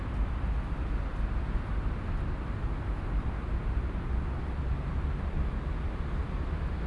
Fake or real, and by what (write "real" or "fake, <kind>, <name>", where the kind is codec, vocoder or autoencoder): real